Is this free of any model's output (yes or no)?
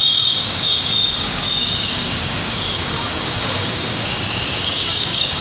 no